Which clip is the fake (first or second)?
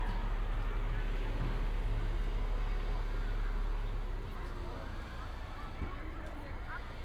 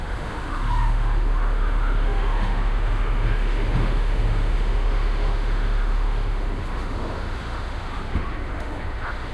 second